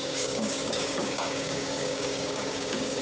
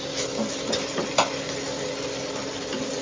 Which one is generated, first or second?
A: first